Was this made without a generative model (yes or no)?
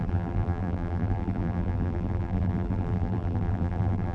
no